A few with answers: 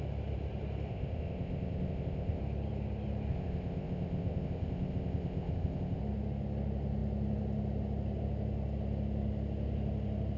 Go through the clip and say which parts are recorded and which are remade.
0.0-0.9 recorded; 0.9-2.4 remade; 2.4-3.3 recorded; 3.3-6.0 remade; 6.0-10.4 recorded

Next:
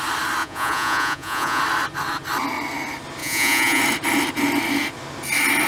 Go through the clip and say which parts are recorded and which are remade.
0.0-0.4 recorded; 0.4-1.6 remade; 1.6-3.2 recorded; 3.2-3.8 remade; 3.8-5.7 recorded

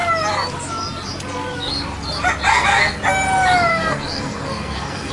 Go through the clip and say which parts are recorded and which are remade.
0.0-2.5 recorded; 2.5-3.0 remade; 3.0-3.7 recorded; 3.7-5.1 remade

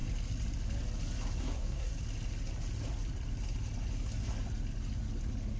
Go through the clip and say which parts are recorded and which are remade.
0.0-1.4 recorded; 1.4-1.9 remade; 1.9-5.6 recorded

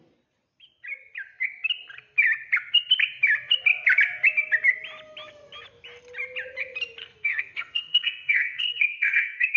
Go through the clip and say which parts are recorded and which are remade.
0.0-7.0 recorded; 7.0-9.6 remade

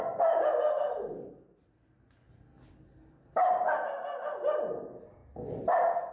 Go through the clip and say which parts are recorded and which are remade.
0.0-6.1 recorded

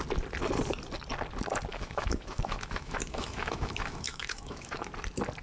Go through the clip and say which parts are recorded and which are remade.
0.0-1.7 recorded; 1.7-4.9 remade; 4.9-5.4 recorded

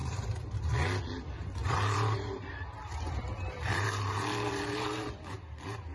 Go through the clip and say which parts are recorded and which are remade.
0.0-0.7 remade; 0.7-1.6 recorded; 1.6-5.1 remade; 5.1-5.9 recorded